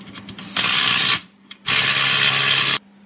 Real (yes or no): yes